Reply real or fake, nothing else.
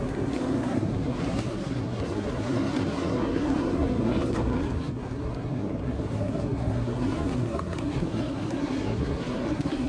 fake